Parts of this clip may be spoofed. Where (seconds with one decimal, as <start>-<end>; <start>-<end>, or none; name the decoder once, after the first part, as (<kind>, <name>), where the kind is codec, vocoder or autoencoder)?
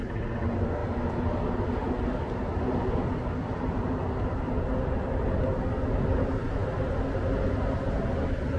none